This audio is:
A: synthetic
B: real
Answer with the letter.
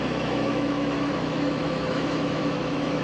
A